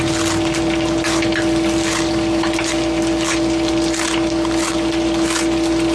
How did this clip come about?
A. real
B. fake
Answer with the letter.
A